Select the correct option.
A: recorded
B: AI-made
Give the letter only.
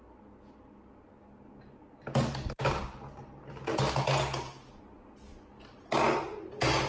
A